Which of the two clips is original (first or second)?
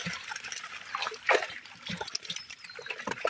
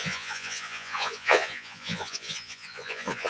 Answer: first